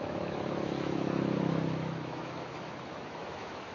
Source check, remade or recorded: remade